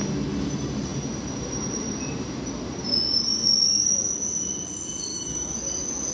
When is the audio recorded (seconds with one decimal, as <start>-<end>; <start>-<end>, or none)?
0.0-5.1; 5.6-6.1